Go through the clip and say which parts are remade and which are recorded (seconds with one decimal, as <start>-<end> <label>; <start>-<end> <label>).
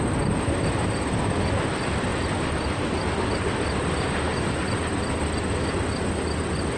0.0-2.1 recorded; 2.1-2.9 remade; 2.9-6.8 recorded